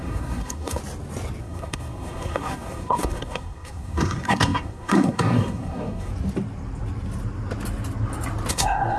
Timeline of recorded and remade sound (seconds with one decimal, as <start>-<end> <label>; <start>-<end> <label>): 0.0-0.8 remade; 0.8-1.4 recorded; 1.4-6.1 remade; 6.1-8.5 recorded; 8.5-9.0 remade